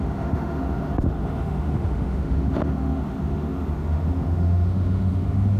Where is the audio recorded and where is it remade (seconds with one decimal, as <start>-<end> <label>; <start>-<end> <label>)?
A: 0.0-5.6 remade